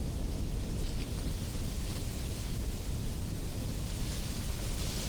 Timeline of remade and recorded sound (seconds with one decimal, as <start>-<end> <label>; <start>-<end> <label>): 0.0-0.5 remade; 0.5-5.1 recorded